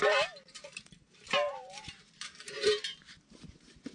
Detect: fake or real fake